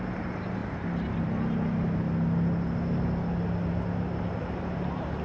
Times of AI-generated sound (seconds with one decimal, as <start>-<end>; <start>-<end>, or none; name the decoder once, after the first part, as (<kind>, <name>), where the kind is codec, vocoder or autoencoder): none